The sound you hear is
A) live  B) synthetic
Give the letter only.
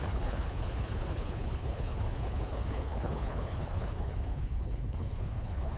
B